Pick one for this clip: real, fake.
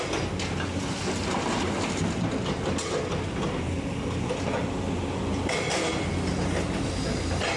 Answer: real